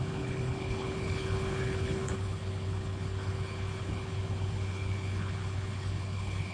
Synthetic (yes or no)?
yes